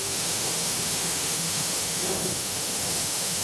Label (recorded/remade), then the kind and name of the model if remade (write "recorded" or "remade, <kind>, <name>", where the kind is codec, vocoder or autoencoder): remade, autoencoder, DAC-VAE